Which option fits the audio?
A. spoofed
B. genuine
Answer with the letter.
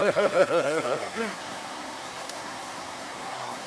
A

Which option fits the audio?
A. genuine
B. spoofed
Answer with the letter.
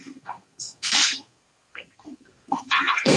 B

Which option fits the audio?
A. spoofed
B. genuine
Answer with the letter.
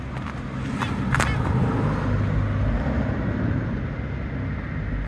B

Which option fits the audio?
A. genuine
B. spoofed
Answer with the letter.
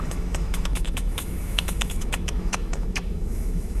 B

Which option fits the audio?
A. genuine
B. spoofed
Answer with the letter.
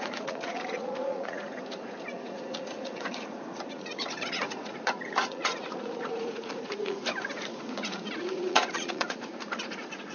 B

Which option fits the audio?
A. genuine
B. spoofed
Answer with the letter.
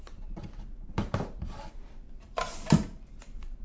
B